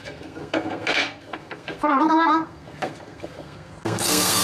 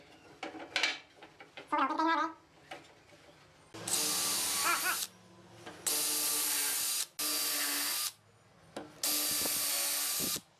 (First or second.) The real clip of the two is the second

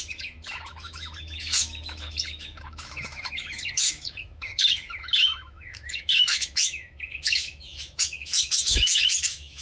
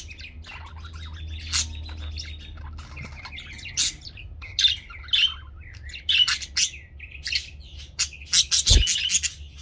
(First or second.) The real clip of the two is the second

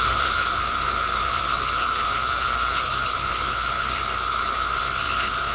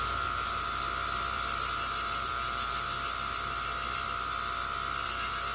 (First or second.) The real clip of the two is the second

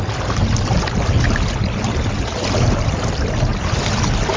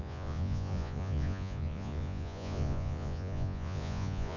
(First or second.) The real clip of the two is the first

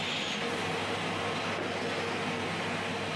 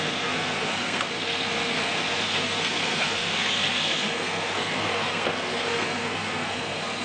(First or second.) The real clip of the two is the first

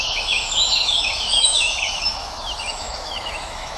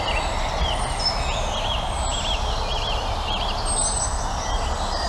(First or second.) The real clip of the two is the second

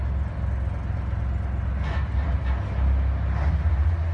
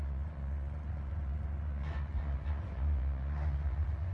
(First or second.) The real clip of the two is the first